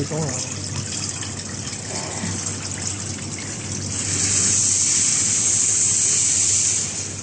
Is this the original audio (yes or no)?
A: yes